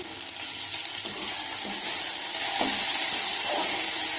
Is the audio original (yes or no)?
no